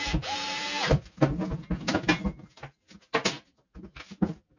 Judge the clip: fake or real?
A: real